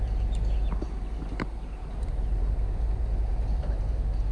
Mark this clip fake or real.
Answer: fake